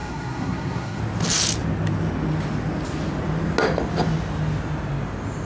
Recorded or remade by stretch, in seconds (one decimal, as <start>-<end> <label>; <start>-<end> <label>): 0.0-1.0 remade; 1.0-5.5 recorded